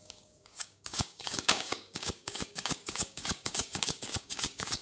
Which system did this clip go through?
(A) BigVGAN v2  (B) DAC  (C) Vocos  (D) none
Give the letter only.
B